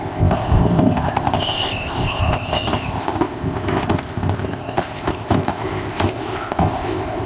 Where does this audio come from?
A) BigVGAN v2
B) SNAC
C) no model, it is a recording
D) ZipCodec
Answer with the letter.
D